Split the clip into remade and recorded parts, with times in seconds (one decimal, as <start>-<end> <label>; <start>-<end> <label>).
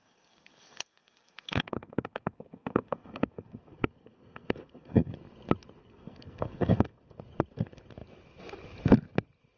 0.0-5.1 remade; 5.1-5.8 recorded; 5.8-7.2 remade; 7.2-9.6 recorded